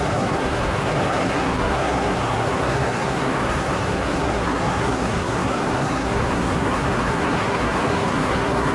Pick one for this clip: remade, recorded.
remade